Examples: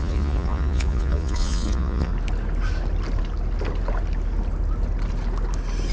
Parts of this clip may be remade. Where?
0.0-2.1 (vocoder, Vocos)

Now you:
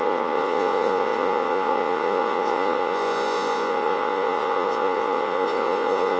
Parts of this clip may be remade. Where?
0.0-6.2 (vocoder, Vocos)

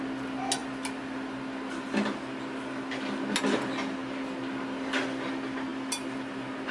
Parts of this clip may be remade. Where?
none

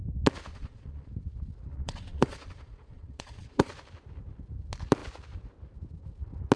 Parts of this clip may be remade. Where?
0.5-1.1 (vocoder, Vocos); 1.7-3.7

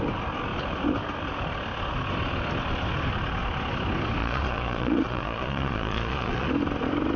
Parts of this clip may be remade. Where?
4.2-6.5 (vocoder, Vocos)